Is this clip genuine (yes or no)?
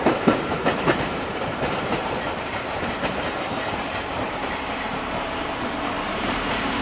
no